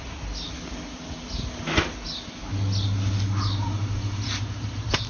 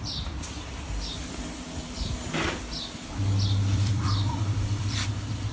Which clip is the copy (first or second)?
second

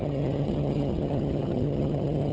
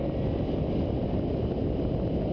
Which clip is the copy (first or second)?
first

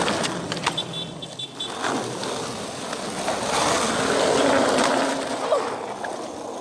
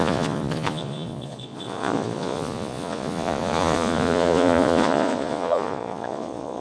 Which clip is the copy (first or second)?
second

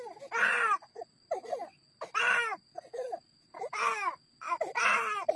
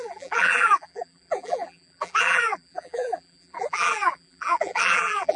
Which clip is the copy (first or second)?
second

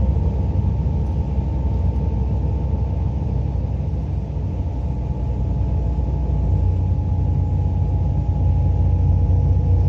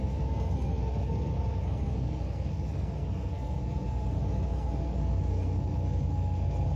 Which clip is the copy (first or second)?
second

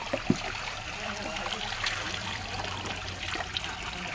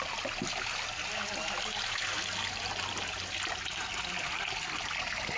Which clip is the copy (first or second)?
first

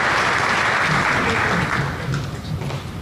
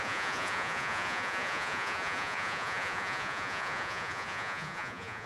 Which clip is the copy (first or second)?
second